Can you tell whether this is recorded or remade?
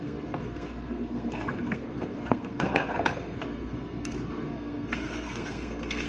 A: remade